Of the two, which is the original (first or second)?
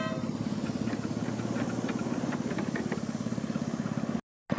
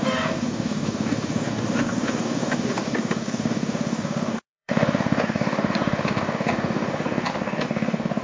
first